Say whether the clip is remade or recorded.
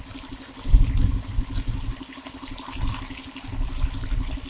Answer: recorded